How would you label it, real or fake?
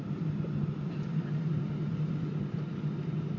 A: real